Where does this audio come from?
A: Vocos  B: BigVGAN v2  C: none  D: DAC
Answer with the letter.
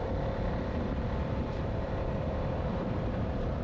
B